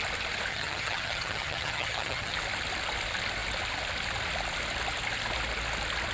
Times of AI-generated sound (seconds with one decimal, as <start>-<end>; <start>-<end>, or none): 0.5-2.4